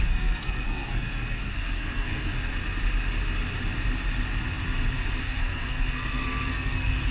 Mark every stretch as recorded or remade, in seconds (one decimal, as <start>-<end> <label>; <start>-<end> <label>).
0.0-2.5 remade; 2.5-5.2 recorded; 5.2-7.1 remade